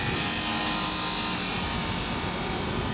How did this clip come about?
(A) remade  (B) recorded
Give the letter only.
B